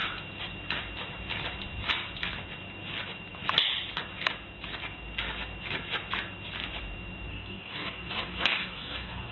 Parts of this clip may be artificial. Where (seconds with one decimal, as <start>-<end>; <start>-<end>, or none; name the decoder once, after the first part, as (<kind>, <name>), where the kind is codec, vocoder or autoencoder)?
7.3-9.3 (codec, DAC)

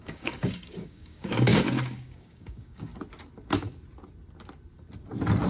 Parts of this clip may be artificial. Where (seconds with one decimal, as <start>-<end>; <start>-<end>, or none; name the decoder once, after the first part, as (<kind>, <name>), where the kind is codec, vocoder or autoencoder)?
0.0-2.9 (codec, DAC)

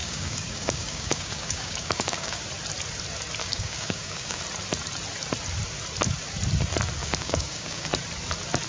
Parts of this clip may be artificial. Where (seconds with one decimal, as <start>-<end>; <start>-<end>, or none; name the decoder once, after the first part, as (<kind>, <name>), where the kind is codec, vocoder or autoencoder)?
0.0-2.4 (codec, DAC); 3.4-4.4; 7.0-7.9

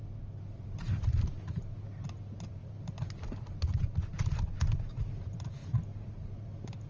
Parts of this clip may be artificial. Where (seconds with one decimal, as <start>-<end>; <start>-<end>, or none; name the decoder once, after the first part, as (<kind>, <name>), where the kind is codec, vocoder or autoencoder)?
none

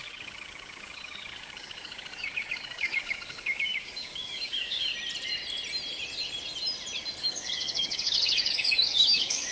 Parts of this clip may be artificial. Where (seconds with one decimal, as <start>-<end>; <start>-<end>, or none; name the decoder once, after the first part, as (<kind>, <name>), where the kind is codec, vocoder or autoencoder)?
0.0-4.9 (codec, DAC); 7.2-9.5